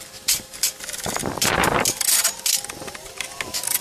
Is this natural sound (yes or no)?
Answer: yes